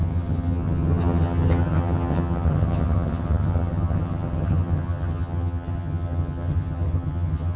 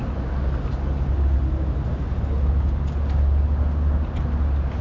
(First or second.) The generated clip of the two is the first